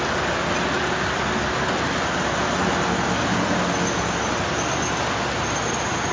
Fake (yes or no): no